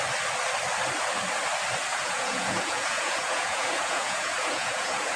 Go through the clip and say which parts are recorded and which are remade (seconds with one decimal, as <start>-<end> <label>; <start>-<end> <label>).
0.0-1.9 recorded; 1.9-5.2 remade